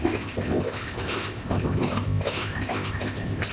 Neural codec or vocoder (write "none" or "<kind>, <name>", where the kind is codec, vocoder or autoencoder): codec, ZipCodec